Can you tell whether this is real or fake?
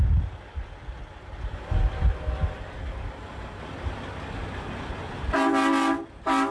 real